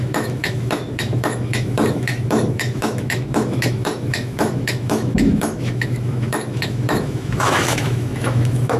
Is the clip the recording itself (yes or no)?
no